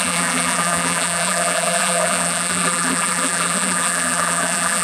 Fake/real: fake